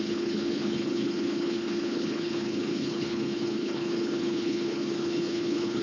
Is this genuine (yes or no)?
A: no